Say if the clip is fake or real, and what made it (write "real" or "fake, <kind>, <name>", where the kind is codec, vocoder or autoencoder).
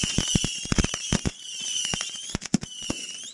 fake, vocoder, Vocos